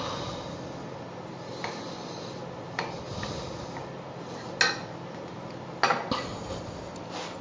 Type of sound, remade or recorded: recorded